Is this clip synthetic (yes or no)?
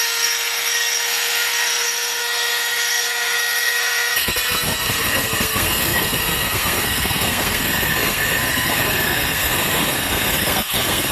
yes